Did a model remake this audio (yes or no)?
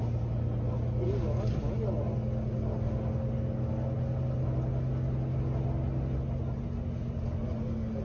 no